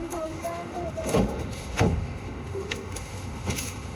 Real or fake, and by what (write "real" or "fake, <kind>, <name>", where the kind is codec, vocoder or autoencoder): fake, autoencoder, DAC-VAE